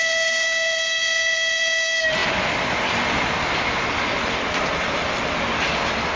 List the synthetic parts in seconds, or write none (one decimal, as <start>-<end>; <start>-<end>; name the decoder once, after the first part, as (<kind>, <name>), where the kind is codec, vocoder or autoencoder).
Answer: none